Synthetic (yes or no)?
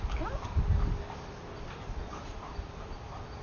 no